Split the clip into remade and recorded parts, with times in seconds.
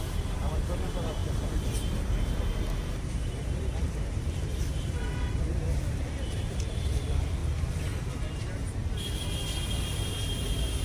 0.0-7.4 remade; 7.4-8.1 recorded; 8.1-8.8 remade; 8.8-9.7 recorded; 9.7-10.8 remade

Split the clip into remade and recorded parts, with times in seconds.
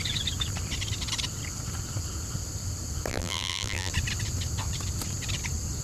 0.0-3.1 recorded; 3.1-3.9 remade; 3.9-5.8 recorded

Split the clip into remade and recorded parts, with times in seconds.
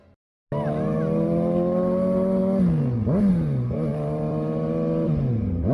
0.0-3.9 recorded; 3.9-5.3 remade; 5.3-5.7 recorded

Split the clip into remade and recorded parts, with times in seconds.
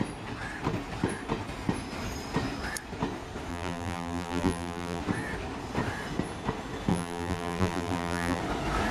0.0-3.5 recorded; 3.5-5.0 remade; 5.0-6.9 recorded; 6.9-8.4 remade; 8.4-8.9 recorded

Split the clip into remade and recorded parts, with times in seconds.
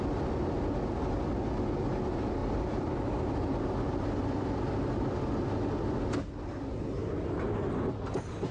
0.0-2.4 recorded; 2.4-3.8 remade; 3.8-8.5 recorded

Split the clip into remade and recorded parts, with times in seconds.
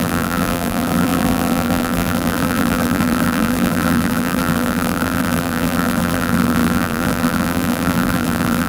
0.0-8.7 remade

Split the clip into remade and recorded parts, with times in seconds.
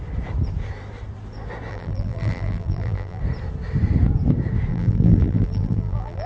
0.0-1.7 recorded; 1.7-3.2 remade; 3.2-4.7 recorded; 4.7-6.3 remade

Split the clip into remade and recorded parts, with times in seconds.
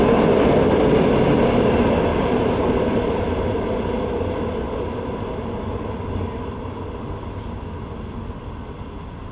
0.0-2.1 recorded; 2.1-3.7 remade; 3.7-9.3 recorded